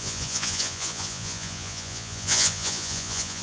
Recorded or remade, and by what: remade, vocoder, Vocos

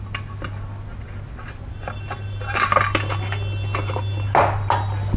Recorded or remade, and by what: recorded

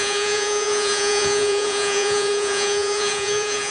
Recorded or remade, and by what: remade, vocoder, Vocos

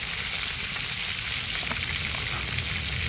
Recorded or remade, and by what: recorded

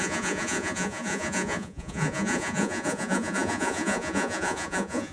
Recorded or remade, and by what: remade, vocoder, Vocos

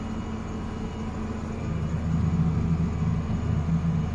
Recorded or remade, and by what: recorded